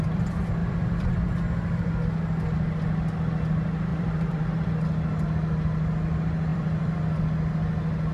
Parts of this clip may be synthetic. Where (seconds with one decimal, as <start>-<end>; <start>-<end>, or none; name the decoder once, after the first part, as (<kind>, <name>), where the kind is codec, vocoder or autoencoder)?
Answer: 0.6-1.1 (vocoder, BigVGAN v2); 3.9-4.5; 6.5-7.2